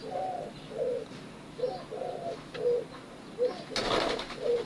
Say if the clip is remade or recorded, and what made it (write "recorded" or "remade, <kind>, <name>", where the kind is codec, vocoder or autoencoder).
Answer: recorded